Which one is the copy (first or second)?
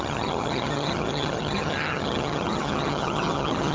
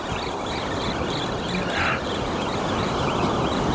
first